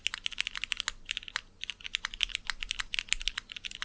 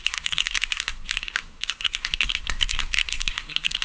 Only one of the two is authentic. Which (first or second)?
first